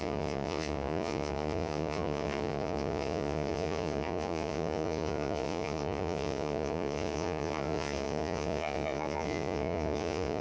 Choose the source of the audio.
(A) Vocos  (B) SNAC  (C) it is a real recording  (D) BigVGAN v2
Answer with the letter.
A